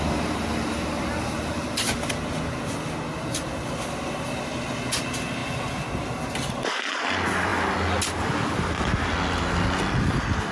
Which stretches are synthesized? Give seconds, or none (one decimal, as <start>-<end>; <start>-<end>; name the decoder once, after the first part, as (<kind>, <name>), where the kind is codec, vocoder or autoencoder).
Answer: none